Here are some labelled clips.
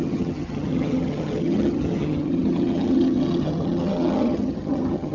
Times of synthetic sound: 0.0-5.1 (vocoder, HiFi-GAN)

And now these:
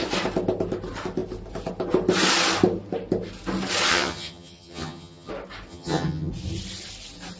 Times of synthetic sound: 3.9-5.3 (vocoder, HiFi-GAN); 5.7-6.3

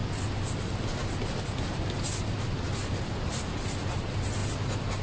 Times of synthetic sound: none

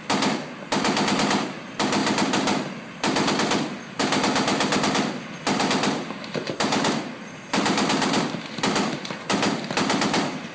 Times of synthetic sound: none

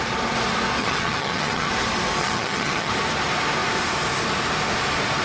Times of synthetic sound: 0.8-1.7 (vocoder, HiFi-GAN); 2.2-2.9

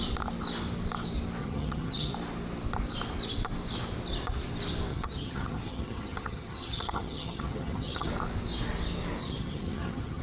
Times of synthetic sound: 1.4-2.1 (vocoder, HiFi-GAN); 4.9-8.1; 9.2-10.2

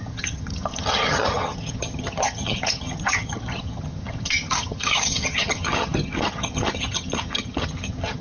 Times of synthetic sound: 0.0-8.2 (vocoder, HiFi-GAN)

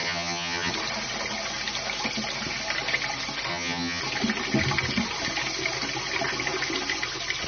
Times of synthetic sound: 0.0-0.7 (vocoder, HiFi-GAN); 3.5-4.0